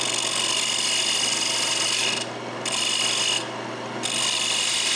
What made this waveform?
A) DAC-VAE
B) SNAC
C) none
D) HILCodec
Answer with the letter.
C